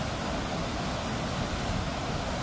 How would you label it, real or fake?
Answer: real